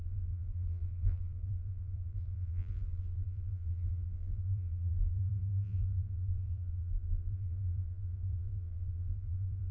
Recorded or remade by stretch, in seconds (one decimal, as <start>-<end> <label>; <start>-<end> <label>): 0.0-9.7 remade